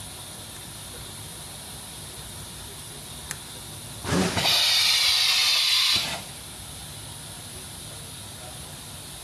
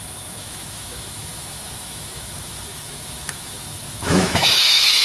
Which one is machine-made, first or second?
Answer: second